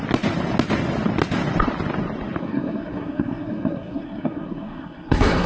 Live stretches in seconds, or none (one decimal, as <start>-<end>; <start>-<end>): 0.0-2.4